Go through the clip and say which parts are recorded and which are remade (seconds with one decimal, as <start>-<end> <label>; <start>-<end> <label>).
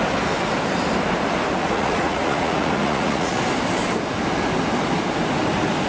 0.0-1.6 recorded; 1.6-3.4 remade; 3.4-5.9 recorded